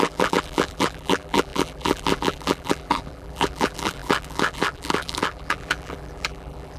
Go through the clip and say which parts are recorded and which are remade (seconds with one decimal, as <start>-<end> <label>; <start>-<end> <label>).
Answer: 0.0-6.8 remade